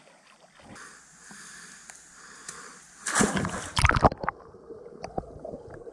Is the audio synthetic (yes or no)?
no